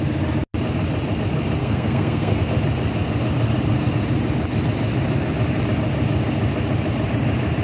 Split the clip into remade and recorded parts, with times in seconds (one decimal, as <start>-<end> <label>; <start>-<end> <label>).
0.0-1.6 recorded; 1.6-2.4 remade; 2.4-7.6 recorded